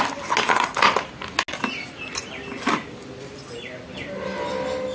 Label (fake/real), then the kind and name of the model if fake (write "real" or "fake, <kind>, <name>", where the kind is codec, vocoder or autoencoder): real